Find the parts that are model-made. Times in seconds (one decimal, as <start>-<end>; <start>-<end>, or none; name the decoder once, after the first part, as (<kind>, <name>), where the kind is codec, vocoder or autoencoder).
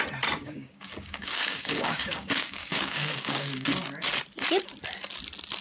0.4-3.7 (codec, DAC)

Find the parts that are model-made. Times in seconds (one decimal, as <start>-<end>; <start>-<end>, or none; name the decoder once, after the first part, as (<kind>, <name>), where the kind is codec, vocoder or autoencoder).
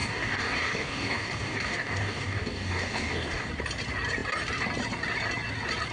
0.0-3.5 (codec, DAC)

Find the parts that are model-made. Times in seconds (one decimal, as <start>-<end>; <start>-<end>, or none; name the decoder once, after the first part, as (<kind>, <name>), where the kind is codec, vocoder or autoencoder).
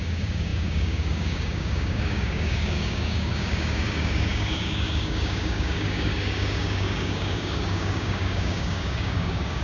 0.0-9.6 (codec, DAC)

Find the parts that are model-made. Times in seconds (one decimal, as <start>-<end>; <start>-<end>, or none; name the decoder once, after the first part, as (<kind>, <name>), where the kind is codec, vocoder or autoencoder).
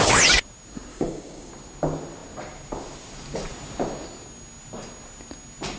0.9-1.5 (codec, DAC)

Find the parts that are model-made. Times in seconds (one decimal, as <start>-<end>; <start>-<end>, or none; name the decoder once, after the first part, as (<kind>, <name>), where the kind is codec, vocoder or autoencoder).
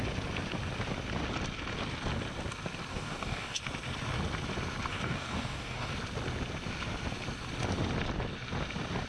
2.9-3.6 (codec, DAC); 4.9-5.9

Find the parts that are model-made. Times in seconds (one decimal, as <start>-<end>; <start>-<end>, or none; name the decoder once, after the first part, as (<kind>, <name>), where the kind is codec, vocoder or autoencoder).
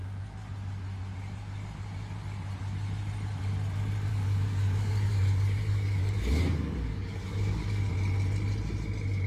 4.1-7.9 (codec, DAC)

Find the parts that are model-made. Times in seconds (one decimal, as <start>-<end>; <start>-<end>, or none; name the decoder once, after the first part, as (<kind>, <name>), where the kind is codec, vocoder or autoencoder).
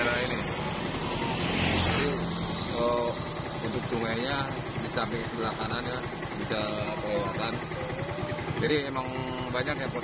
5.2-5.8 (codec, DAC); 8.2-8.7